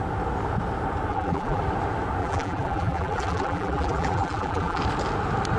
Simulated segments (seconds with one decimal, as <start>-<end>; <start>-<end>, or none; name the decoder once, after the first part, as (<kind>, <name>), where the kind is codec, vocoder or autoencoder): 1.1-1.6 (vocoder, BigVGAN v2); 2.2-4.8